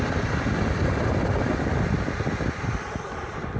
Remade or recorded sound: recorded